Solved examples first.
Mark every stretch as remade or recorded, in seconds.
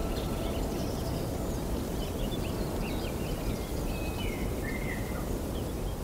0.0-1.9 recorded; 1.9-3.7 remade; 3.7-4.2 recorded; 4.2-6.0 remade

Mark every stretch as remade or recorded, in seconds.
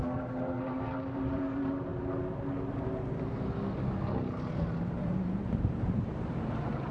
0.0-1.9 remade; 1.9-5.0 recorded; 5.0-6.9 remade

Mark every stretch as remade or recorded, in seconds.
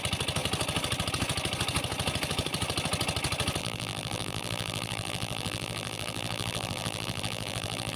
0.0-3.6 recorded; 3.6-8.0 remade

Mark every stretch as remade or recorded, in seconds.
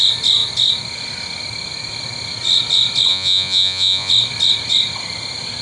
0.0-3.1 recorded; 3.1-4.1 remade; 4.1-5.6 recorded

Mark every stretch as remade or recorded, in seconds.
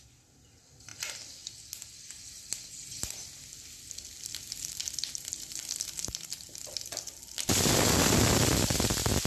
0.0-9.3 recorded